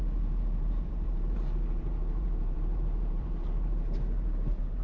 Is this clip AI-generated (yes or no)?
yes